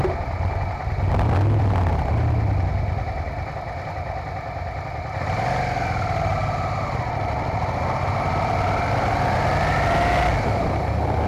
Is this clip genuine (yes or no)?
yes